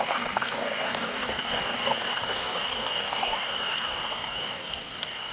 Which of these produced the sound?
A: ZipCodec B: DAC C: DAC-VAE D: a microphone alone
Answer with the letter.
B